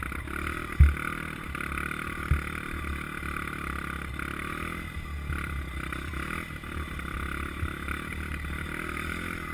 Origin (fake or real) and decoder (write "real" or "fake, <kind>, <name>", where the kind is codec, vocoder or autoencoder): real